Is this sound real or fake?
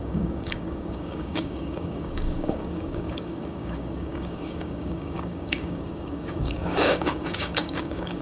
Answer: fake